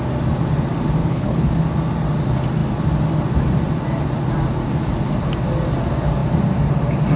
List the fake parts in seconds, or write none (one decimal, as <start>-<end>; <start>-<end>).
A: 1.0-1.5